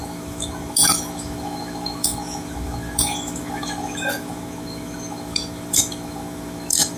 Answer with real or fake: fake